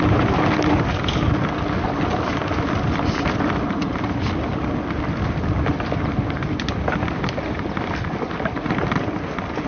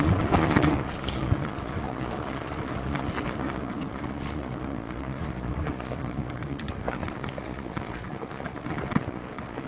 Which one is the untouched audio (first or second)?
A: first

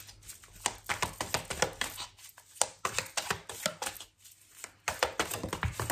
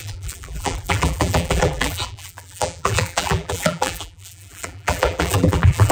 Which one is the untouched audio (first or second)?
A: first